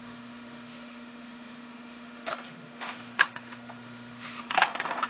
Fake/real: fake